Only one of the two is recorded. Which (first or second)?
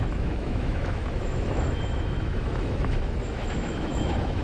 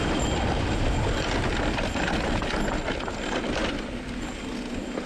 second